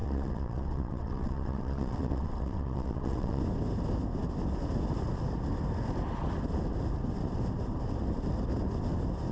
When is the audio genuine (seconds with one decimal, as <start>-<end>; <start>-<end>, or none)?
3.4-9.3